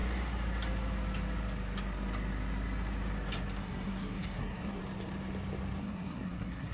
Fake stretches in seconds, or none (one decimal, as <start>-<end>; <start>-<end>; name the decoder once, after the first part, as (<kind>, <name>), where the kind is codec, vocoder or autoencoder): 3.6-4.8 (codec, SNAC); 5.8-6.7